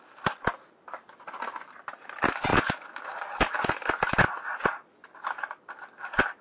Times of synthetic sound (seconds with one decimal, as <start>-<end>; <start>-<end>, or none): none